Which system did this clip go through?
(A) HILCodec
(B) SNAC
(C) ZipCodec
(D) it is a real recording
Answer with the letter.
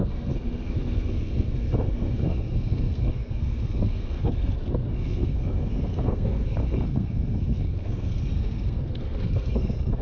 B